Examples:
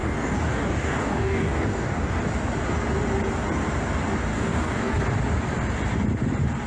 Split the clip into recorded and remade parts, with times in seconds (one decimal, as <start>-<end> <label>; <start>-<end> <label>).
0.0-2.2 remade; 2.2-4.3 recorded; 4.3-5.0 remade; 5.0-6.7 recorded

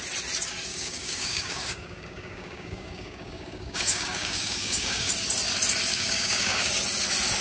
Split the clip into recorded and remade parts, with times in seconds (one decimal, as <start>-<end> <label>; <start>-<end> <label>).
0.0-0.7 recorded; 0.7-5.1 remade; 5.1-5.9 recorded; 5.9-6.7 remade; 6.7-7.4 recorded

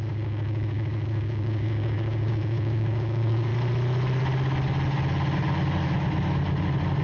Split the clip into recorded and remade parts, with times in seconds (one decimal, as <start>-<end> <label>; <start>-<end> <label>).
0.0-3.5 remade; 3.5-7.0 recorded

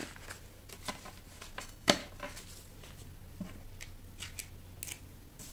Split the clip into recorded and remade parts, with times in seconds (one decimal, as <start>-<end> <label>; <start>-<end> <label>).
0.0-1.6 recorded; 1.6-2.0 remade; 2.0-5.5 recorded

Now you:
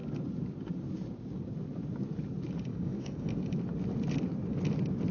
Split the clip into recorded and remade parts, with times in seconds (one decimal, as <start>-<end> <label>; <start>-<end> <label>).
0.0-2.7 recorded; 2.7-3.3 remade; 3.3-5.1 recorded

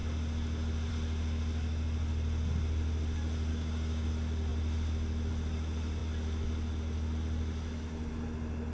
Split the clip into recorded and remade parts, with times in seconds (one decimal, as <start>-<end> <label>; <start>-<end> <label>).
0.0-3.5 recorded; 3.5-4.1 remade; 4.1-8.7 recorded